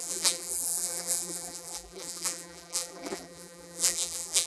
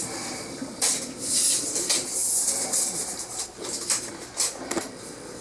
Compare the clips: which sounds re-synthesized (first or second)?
first